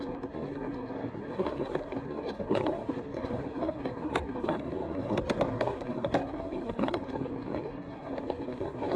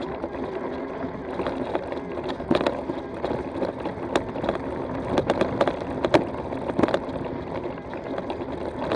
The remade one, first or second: first